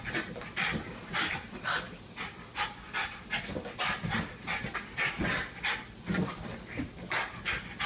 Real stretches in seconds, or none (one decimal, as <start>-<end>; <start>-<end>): 0.0-7.9